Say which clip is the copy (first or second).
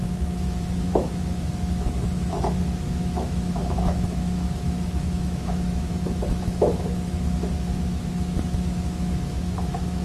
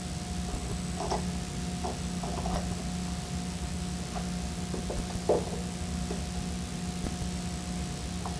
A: first